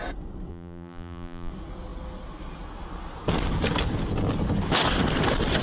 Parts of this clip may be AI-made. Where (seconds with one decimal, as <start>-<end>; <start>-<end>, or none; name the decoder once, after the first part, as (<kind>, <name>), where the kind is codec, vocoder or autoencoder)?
0.5-1.5 (vocoder, BigVGAN v2)